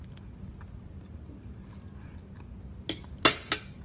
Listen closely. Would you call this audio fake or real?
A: real